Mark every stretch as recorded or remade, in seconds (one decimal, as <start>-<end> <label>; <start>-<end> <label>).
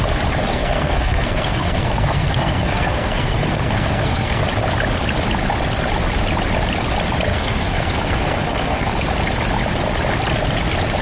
0.0-0.5 recorded; 0.5-4.4 remade; 4.4-7.3 recorded; 7.3-8.9 remade; 8.9-11.0 recorded